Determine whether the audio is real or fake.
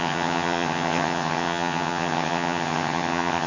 fake